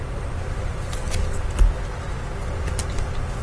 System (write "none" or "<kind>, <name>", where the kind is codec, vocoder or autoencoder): none